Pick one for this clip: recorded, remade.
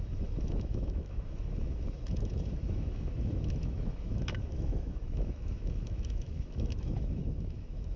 remade